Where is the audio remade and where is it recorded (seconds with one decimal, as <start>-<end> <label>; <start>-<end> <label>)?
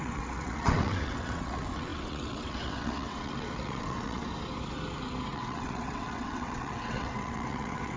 0.0-4.2 remade; 4.2-5.3 recorded; 5.3-8.0 remade